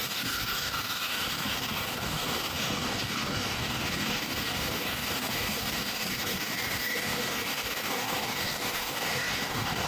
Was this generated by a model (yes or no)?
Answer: yes